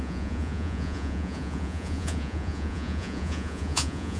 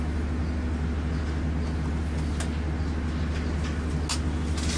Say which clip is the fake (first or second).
first